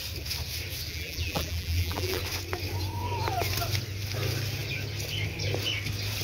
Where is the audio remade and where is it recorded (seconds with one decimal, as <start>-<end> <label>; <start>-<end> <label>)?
0.0-0.9 recorded; 0.9-2.2 remade; 2.2-6.2 recorded